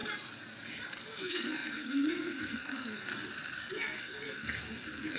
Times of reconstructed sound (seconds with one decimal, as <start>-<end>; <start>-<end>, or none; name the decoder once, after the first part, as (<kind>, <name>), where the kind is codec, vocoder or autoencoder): 1.0-3.1 (codec, SNAC); 3.7-5.2